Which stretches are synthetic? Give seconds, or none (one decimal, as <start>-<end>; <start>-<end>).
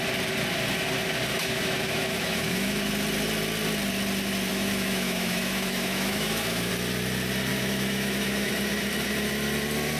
1.3-2.9; 4.5-6.7; 7.5-8.5